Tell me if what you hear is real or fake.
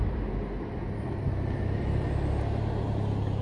real